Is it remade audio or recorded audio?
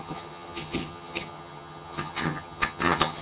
remade